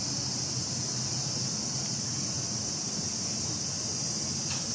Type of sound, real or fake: real